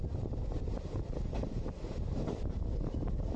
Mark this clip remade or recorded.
recorded